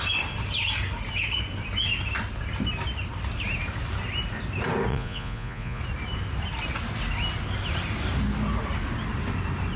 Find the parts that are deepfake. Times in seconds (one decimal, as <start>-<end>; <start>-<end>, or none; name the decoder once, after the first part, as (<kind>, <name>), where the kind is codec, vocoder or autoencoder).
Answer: 4.9-5.8 (vocoder, Vocos)